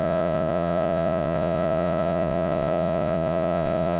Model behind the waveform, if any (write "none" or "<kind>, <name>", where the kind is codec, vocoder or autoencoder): vocoder, Vocos